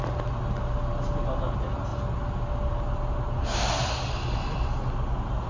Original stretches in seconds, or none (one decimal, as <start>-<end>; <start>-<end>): 0.0-5.5